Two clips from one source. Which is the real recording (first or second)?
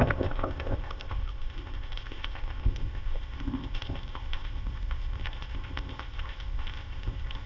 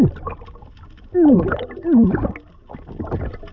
second